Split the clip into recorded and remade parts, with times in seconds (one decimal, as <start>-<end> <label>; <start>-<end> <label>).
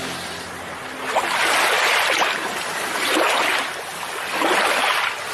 0.0-5.3 recorded